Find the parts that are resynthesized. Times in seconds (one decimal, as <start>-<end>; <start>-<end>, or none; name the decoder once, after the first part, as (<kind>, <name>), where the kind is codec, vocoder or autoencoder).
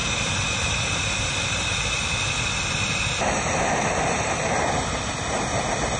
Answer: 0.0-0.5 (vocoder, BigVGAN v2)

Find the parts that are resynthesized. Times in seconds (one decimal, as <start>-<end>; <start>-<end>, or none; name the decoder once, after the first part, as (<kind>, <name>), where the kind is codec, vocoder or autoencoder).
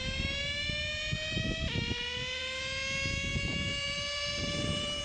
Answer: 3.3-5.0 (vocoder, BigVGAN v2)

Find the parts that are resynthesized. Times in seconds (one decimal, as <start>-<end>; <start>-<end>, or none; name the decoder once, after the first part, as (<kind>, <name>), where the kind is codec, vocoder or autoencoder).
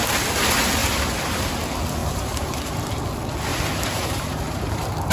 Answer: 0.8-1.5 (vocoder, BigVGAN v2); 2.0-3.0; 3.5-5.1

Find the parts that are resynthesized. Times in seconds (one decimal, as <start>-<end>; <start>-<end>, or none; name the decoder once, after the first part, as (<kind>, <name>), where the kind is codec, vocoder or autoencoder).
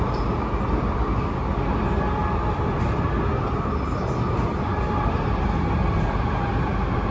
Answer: 2.2-3.1 (vocoder, BigVGAN v2)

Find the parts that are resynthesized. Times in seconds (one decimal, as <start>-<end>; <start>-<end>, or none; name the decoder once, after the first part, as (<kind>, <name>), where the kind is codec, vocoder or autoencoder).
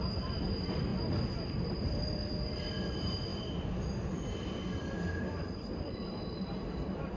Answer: 0.0-0.9 (vocoder, BigVGAN v2); 1.5-3.3; 5.2-7.2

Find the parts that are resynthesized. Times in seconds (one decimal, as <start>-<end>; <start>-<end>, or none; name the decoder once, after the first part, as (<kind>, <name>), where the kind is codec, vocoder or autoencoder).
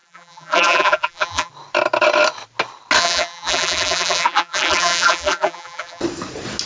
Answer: 0.0-1.5 (vocoder, BigVGAN v2); 3.0-6.0